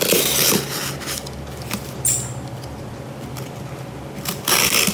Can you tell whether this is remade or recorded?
recorded